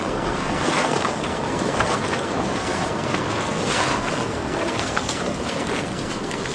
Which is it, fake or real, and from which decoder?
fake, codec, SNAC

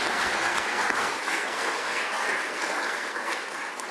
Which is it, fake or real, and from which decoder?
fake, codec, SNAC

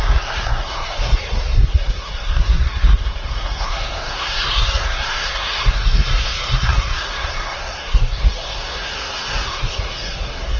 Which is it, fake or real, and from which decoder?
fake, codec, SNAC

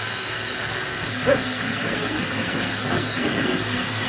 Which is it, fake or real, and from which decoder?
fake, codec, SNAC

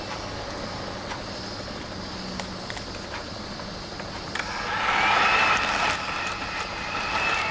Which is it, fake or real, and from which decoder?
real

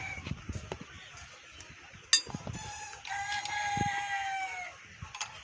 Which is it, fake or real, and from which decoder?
real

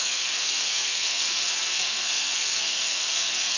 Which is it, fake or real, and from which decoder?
fake, codec, SNAC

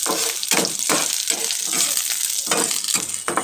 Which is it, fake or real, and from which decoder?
real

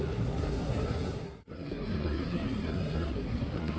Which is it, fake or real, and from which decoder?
fake, codec, SNAC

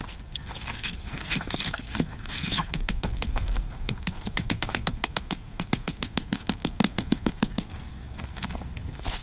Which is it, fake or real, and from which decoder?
fake, codec, SNAC